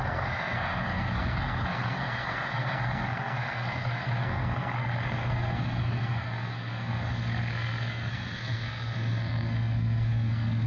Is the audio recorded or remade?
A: remade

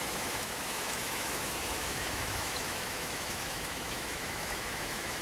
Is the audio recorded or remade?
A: remade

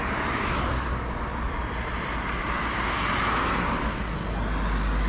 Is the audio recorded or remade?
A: recorded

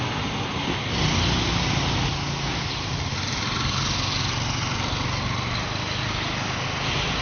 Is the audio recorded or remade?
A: recorded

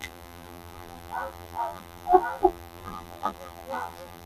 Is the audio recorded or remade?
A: remade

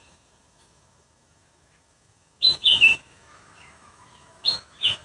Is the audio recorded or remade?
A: remade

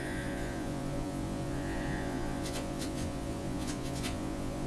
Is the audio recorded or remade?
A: remade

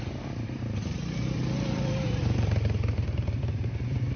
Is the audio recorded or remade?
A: remade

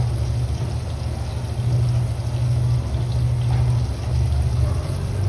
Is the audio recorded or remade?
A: recorded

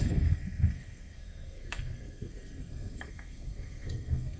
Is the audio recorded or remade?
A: remade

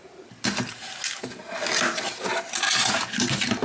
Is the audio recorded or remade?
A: recorded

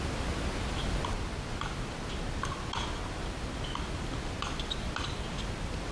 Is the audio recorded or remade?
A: recorded